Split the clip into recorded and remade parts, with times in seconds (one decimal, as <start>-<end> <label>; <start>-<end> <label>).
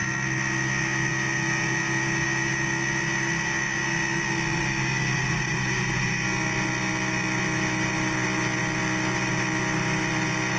0.0-10.6 recorded